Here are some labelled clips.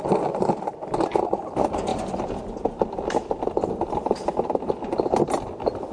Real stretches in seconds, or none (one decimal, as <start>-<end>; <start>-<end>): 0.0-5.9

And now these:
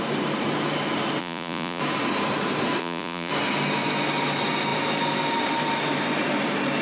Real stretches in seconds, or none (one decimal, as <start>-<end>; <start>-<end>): 0.0-1.2; 1.8-2.8; 3.3-6.8

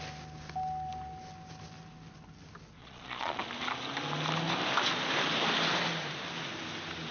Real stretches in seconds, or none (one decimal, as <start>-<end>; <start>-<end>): 0.0-2.8; 3.4-7.1

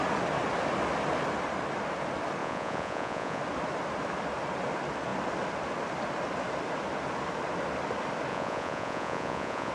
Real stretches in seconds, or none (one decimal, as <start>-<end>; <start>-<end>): 0.0-2.4; 3.4-8.3

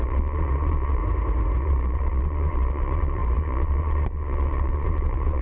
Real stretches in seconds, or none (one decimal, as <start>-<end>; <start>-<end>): 1.0-1.6

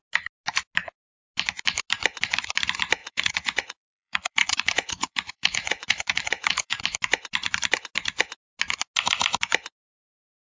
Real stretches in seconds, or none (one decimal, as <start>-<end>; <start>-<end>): 0.0-3.0; 6.8-10.5

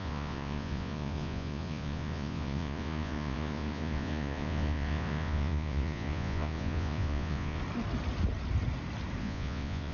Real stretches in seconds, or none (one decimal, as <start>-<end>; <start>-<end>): 7.6-9.2